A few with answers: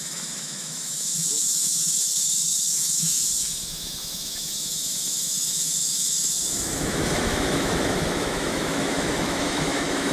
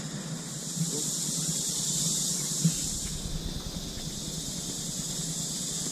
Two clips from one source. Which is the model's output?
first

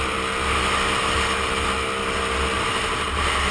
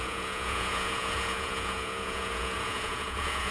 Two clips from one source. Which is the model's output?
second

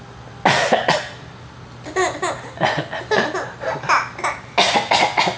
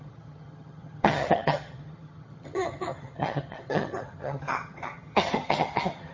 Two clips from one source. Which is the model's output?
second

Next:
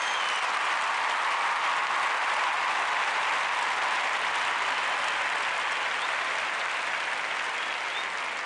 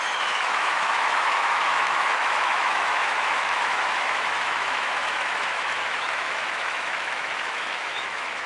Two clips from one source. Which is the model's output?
second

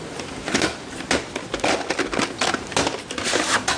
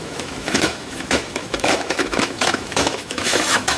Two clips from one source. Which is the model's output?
second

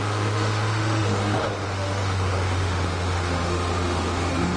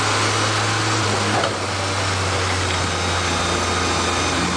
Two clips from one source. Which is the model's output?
first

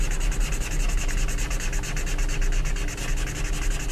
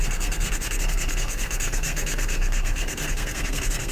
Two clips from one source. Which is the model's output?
second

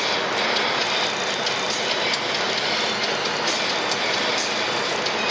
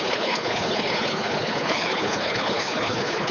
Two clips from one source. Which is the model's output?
second